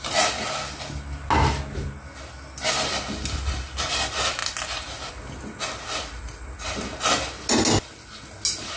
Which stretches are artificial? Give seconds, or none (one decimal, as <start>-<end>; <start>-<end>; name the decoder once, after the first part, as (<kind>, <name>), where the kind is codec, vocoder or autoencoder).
none